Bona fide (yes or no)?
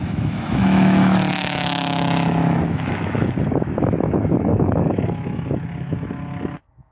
no